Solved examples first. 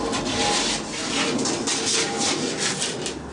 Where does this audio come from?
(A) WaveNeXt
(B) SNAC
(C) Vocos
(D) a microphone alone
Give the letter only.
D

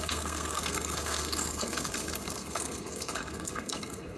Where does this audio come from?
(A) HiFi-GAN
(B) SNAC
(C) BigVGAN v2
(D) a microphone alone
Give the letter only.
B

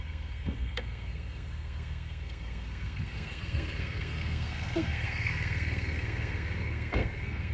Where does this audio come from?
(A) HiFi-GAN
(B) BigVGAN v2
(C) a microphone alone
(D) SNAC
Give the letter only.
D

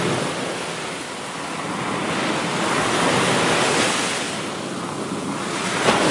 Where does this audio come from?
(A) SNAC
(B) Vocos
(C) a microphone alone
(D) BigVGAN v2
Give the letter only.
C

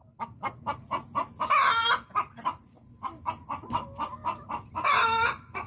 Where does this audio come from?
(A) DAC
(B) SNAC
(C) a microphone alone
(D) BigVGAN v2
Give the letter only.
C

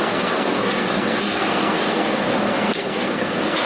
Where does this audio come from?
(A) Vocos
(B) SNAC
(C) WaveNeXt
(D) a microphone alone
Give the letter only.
B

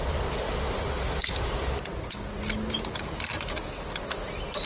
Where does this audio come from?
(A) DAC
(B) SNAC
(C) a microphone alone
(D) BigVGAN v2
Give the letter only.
C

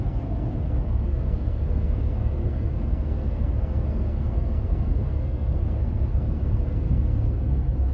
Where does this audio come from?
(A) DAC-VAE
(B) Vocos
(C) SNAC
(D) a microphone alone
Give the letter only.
C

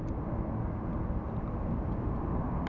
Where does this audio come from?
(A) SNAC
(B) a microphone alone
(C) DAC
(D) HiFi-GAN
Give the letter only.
B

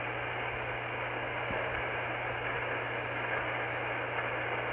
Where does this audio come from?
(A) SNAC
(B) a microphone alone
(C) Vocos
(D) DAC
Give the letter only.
B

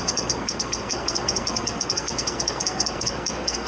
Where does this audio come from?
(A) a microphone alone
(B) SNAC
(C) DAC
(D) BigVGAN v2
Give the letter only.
B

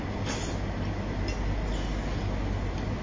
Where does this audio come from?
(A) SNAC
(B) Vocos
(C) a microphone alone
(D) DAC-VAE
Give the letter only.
C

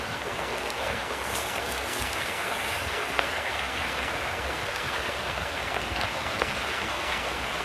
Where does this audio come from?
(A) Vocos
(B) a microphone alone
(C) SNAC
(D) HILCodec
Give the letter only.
C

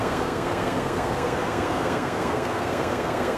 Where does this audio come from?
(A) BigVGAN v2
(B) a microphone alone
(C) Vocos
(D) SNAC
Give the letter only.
D